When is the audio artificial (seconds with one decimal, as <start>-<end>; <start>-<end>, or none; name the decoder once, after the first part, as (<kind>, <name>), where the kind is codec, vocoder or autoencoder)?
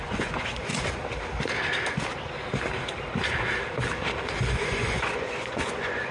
0.0-0.7 (vocoder, Vocos); 4.4-6.1